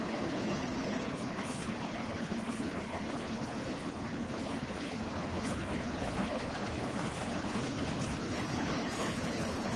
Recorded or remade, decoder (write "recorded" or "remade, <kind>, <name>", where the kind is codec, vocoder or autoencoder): remade, codec, HILCodec